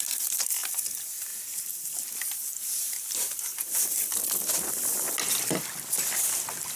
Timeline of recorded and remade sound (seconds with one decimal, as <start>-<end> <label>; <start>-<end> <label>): 0.0-6.8 recorded